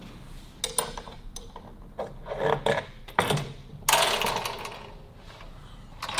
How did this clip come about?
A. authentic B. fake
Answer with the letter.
A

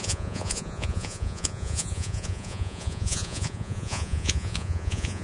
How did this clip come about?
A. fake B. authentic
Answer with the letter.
A